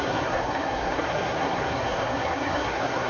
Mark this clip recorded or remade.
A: remade